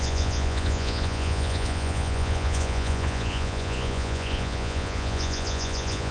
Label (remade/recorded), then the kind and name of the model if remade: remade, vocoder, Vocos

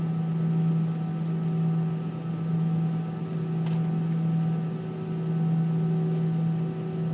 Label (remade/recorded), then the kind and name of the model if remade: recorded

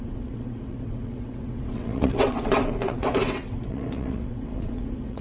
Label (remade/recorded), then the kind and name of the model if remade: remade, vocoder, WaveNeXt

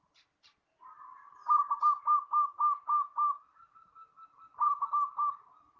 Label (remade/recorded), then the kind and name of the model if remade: recorded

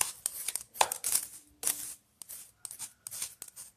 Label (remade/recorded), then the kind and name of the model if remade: recorded